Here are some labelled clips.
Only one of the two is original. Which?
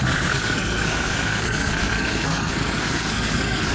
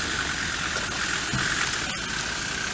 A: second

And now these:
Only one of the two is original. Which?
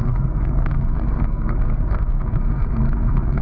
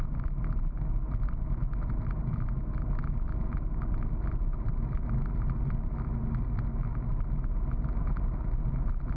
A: second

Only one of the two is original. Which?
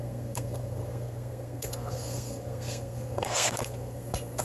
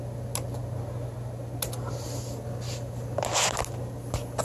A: second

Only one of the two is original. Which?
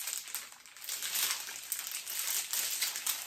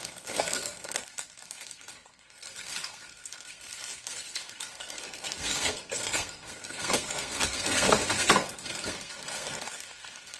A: first